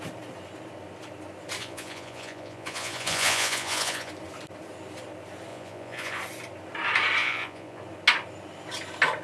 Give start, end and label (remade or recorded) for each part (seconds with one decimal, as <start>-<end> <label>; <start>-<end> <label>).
0.0-1.6 recorded; 1.6-4.1 remade; 4.1-5.5 recorded; 5.5-6.2 remade; 6.2-7.2 recorded; 7.2-7.8 remade; 7.8-9.2 recorded